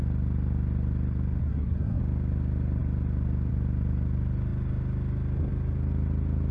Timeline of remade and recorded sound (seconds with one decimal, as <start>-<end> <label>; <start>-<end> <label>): 0.0-1.4 recorded; 1.4-2.0 remade; 2.0-6.5 recorded